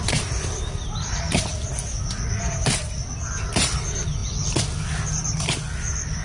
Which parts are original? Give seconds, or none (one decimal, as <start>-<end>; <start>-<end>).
1.5-3.3; 4.2-5.1